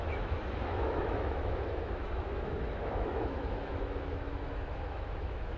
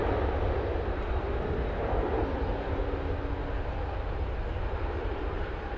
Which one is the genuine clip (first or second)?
second